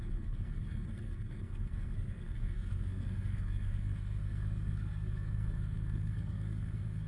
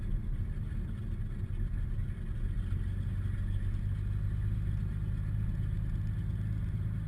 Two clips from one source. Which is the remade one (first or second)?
first